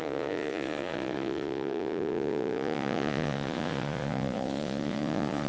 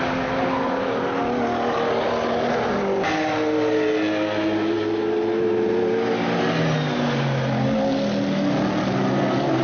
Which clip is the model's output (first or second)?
first